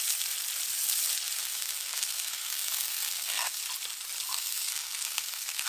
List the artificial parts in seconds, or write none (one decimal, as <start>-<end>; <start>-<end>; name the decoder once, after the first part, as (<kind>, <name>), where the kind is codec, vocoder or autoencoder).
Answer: 1.4-3.6 (codec, SNAC); 4.3-5.7